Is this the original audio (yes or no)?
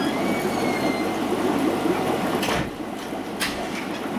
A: yes